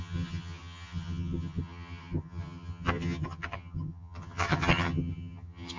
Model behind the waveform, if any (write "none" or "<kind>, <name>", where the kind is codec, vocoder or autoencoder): vocoder, HiFi-GAN